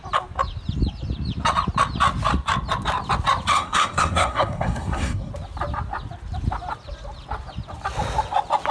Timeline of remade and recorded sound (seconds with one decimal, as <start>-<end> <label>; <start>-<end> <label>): 0.0-3.5 recorded; 3.5-5.3 remade; 5.3-8.7 recorded